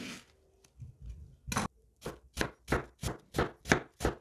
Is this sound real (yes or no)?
yes